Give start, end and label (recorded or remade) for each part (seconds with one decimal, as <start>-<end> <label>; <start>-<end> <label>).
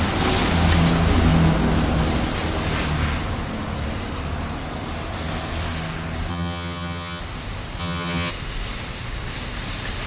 0.0-6.3 recorded; 6.3-7.2 remade; 7.2-7.8 recorded; 7.8-8.3 remade; 8.3-10.1 recorded